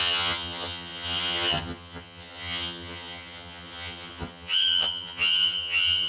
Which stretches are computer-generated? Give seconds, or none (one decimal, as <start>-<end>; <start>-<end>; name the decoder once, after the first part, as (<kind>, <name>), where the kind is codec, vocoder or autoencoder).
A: 0.0-6.1 (vocoder, HiFi-GAN)

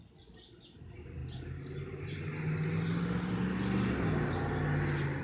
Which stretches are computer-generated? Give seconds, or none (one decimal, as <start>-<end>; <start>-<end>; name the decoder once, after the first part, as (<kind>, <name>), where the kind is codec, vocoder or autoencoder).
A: none

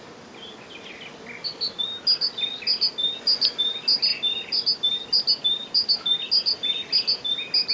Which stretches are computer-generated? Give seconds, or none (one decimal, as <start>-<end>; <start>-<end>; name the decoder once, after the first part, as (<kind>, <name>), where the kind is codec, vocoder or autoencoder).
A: none

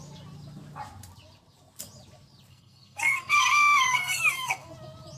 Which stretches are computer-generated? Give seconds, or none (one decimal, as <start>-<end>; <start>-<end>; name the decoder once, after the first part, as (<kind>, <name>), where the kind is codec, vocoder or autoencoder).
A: 2.5-4.7 (codec, SNAC)

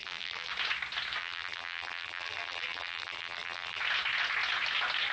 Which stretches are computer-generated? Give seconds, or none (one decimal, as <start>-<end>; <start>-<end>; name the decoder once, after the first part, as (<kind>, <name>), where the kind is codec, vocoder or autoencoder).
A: 0.0-0.5 (vocoder, BigVGAN v2); 1.2-3.8